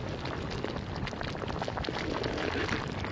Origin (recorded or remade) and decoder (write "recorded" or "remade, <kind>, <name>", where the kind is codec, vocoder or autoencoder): recorded